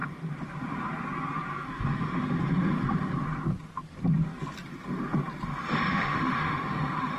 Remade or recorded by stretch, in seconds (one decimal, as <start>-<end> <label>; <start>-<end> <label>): 0.0-5.9 recorded; 5.9-7.2 remade